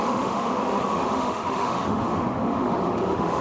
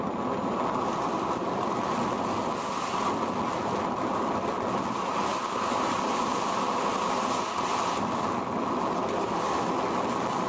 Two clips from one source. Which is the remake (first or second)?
first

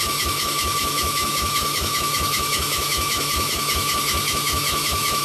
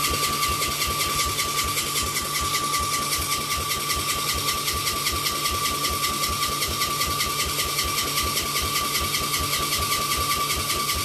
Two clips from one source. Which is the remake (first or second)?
first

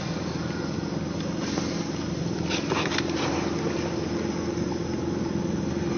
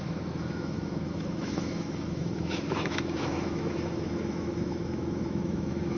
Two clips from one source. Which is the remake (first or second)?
second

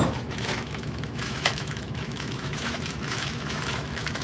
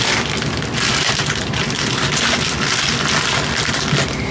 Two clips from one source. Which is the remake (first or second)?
first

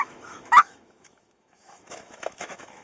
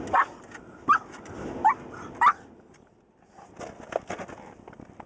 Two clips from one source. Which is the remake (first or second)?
first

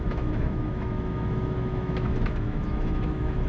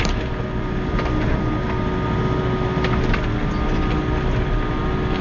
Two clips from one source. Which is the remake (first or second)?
first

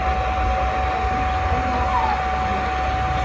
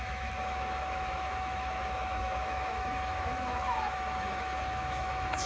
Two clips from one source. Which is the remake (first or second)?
second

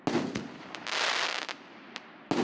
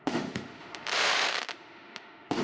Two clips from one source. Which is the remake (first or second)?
second